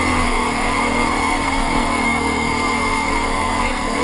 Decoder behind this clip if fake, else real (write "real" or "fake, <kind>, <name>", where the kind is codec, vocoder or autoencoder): fake, codec, SNAC